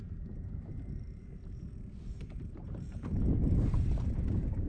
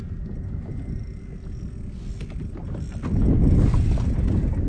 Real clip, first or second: second